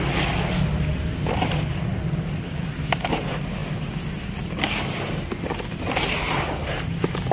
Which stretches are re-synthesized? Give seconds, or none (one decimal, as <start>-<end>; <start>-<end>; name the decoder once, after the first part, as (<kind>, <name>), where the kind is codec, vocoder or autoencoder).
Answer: none